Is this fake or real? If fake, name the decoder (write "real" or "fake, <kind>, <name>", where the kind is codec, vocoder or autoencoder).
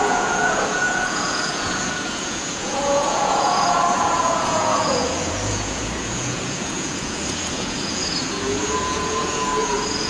fake, vocoder, Vocos